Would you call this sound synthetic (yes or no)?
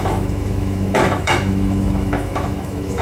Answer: yes